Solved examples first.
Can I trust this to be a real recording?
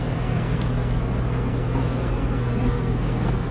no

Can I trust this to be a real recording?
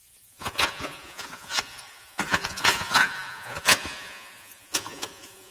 no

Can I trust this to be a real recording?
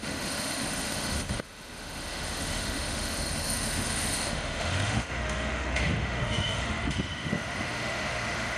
no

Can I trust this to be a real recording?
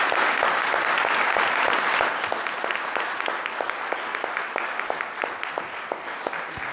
yes